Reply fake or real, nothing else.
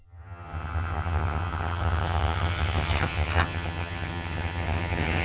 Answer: fake